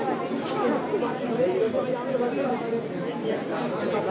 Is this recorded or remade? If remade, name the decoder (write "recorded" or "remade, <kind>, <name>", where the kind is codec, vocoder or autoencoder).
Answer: recorded